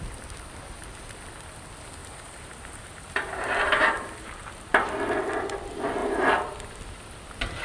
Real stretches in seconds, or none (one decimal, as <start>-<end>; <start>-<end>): 0.0-2.0; 4.6-6.0; 6.8-7.6